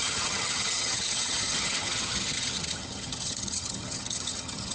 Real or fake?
fake